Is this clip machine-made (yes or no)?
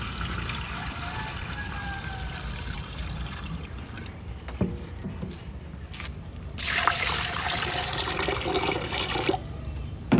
yes